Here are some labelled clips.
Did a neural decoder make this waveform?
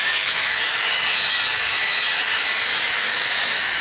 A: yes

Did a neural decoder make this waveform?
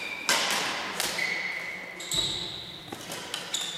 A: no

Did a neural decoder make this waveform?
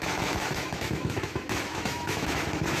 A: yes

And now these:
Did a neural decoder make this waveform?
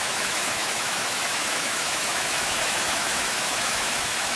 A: yes